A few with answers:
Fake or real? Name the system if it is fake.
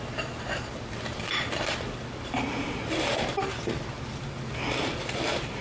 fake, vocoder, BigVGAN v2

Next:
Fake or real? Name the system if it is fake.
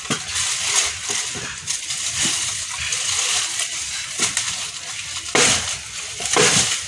real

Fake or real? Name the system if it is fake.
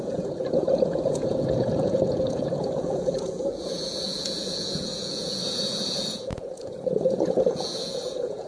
fake, vocoder, Vocos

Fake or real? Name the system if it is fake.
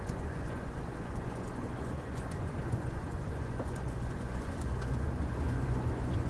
fake, vocoder, Vocos